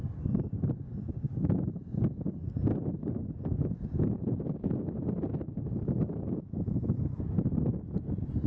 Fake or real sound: real